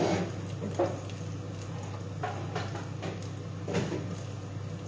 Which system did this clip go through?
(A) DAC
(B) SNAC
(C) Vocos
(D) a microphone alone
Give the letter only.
D